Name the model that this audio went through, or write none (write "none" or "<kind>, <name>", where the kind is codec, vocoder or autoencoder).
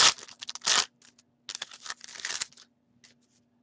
none